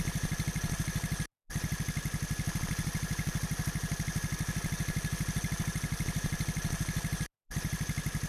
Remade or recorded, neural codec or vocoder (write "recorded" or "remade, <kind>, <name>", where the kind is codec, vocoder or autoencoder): recorded